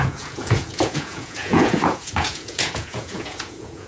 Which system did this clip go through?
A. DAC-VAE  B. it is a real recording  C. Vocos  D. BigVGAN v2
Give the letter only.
C